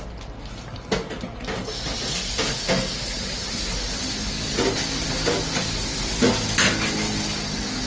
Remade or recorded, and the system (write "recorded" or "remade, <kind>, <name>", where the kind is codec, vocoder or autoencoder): recorded